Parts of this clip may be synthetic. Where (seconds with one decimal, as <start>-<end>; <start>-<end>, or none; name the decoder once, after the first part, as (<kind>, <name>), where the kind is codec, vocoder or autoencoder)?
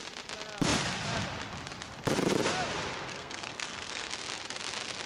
3.1-4.1 (codec, SNAC)